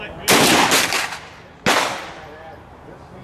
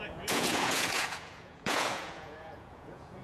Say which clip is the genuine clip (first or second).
first